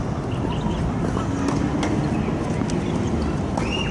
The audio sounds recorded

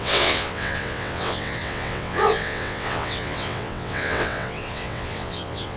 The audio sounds remade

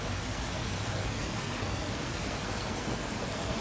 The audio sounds remade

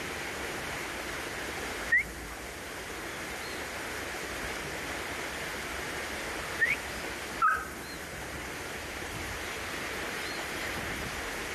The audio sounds recorded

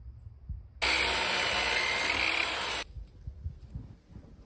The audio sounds recorded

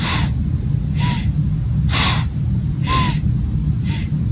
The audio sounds recorded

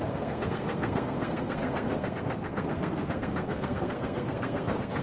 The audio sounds remade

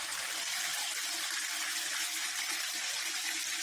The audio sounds recorded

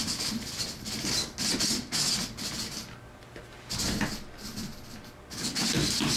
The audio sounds recorded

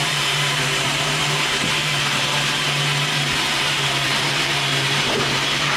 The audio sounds remade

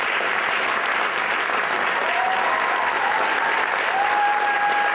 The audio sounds recorded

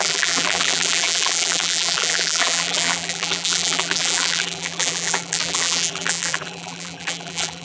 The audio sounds remade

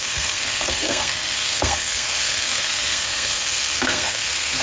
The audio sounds remade